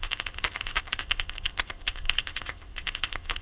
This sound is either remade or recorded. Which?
remade